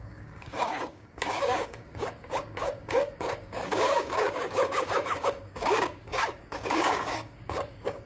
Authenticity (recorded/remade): remade